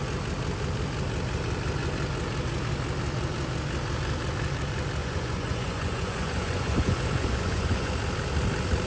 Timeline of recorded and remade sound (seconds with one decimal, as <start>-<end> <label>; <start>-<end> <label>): 0.0-5.0 recorded; 5.0-7.9 remade; 7.9-8.9 recorded